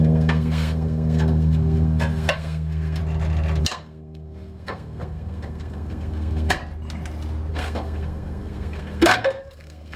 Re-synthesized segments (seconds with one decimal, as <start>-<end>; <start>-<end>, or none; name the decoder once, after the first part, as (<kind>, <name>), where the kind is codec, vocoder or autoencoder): 0.0-3.0 (codec, SNAC); 3.6-6.6; 7.5-10.0